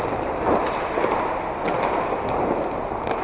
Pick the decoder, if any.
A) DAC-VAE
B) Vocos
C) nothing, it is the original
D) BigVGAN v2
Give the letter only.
C